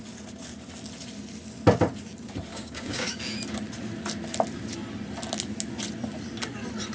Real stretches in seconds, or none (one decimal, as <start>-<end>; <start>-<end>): 0.0-2.5; 3.2-6.9